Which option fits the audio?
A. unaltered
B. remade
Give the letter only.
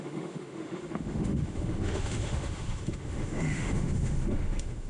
B